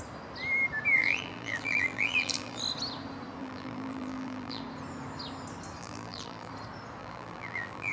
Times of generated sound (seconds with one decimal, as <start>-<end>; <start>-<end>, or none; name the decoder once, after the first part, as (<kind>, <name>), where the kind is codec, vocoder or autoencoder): 1.0-2.6 (vocoder, BigVGAN v2); 3.4-4.6; 5.8-6.5; 7.0-7.9